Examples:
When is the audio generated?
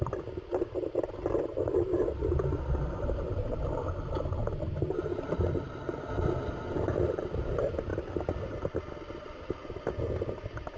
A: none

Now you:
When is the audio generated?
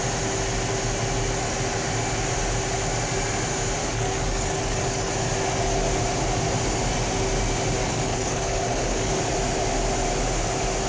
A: 3.8-5.1; 7.8-9.1